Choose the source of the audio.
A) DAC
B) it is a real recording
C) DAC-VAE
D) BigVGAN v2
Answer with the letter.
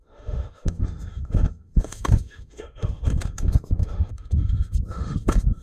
C